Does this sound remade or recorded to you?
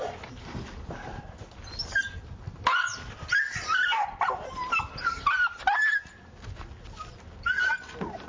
recorded